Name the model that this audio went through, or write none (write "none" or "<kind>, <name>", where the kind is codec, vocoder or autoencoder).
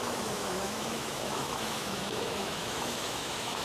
autoencoder, DAC-VAE